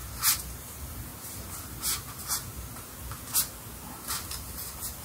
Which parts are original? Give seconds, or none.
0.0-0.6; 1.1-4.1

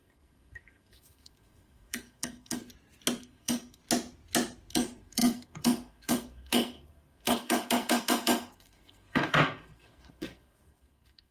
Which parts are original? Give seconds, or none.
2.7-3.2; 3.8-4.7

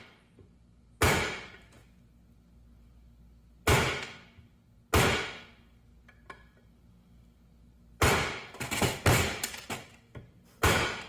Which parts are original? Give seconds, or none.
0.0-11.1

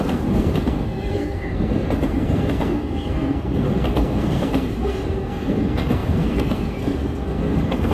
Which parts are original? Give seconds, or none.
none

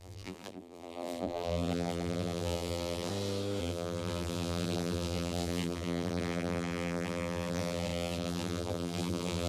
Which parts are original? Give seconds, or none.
3.1-3.6